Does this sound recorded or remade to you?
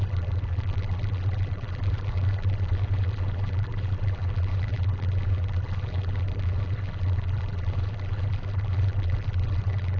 remade